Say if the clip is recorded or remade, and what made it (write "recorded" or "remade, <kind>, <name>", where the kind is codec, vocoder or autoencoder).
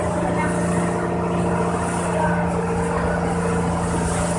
recorded